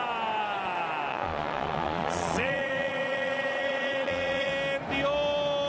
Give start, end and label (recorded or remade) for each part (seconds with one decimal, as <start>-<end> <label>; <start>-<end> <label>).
0.0-1.1 recorded; 1.1-4.5 remade; 4.5-5.7 recorded